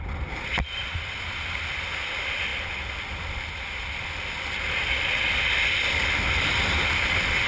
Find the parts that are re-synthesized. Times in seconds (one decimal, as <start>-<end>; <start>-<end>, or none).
none